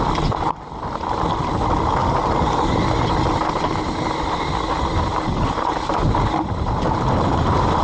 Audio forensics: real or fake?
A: real